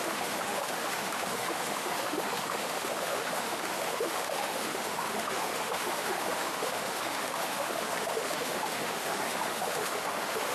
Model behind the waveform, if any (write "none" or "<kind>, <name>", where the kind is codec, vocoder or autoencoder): autoencoder, DAC-VAE